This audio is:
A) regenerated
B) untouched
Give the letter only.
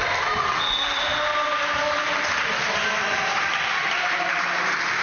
B